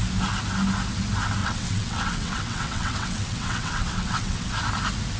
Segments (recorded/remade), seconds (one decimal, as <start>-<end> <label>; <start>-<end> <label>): 0.0-1.4 recorded; 1.4-4.5 remade; 4.5-5.2 recorded